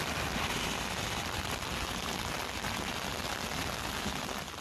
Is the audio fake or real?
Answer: real